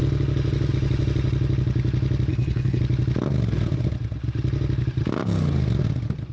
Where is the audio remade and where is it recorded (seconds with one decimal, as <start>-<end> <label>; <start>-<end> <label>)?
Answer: 0.0-2.3 recorded; 2.3-2.8 remade; 2.8-6.3 recorded